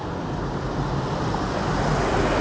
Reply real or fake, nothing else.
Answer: real